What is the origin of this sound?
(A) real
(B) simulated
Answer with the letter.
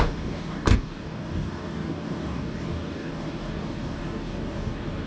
B